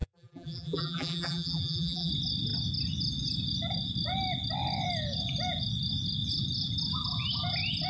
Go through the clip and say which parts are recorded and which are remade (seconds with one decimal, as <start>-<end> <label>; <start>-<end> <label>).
0.0-2.1 remade; 2.1-7.9 recorded